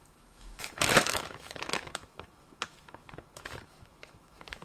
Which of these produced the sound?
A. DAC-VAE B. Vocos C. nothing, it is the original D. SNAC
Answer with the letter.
A